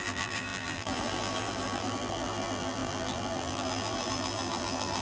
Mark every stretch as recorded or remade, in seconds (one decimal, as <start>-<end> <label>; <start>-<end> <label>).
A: 0.0-5.0 remade